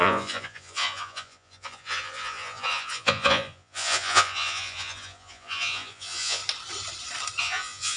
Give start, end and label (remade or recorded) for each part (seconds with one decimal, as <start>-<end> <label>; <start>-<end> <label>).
0.0-6.4 remade; 6.4-7.4 recorded; 7.4-8.0 remade